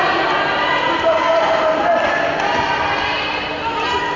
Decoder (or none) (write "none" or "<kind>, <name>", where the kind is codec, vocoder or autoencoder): none